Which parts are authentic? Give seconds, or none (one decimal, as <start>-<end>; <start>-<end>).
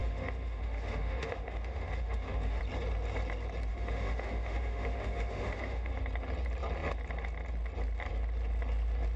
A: 2.6-3.7; 5.9-9.2